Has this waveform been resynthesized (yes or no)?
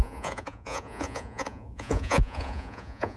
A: yes